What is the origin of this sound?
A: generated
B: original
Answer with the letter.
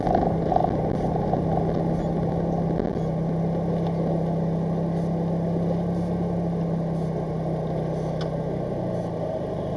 B